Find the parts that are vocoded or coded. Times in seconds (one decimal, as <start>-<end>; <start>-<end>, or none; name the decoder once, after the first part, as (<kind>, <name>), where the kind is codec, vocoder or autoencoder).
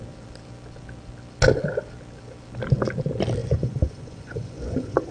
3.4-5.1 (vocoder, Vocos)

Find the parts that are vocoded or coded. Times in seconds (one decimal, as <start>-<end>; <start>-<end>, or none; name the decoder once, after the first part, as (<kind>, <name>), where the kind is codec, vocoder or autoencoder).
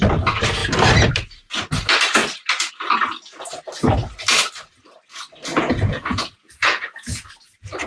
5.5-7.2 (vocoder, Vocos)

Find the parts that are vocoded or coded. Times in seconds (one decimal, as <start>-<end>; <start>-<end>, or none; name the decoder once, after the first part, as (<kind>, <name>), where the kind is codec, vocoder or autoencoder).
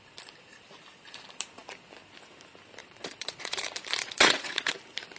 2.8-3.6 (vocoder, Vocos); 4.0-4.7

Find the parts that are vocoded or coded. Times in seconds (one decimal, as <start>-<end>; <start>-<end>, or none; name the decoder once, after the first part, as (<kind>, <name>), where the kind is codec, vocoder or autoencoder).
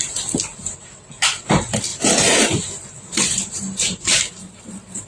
4.4-5.1 (vocoder, Vocos)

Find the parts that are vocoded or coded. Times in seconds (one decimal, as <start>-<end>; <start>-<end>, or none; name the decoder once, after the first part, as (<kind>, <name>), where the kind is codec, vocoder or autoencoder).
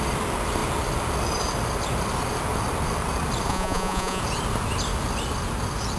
3.5-4.2 (vocoder, Vocos)